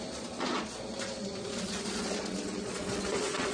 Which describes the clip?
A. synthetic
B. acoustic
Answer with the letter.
A